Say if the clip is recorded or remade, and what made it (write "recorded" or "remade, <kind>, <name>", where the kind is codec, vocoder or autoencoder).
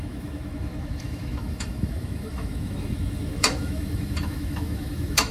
remade, autoencoder, DAC-VAE